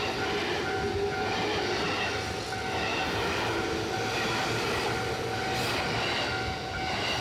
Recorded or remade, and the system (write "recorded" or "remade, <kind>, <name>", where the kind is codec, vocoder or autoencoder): recorded